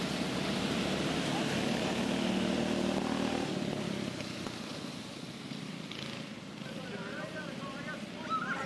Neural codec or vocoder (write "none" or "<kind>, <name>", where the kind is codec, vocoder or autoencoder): none